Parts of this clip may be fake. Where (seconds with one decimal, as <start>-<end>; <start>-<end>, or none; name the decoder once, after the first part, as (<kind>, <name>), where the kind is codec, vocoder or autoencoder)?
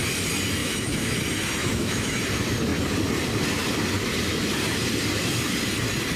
0.6-1.2 (autoencoder, DAC-VAE); 1.6-2.2